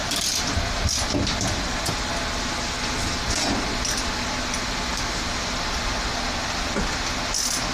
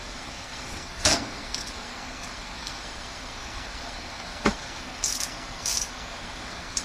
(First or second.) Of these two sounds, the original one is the first